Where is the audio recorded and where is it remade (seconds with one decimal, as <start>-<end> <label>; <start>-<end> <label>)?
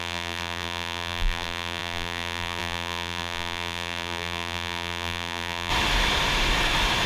0.0-5.7 remade; 5.7-7.1 recorded